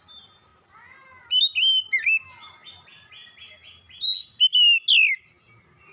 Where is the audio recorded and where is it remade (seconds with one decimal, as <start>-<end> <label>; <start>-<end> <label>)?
0.0-5.9 recorded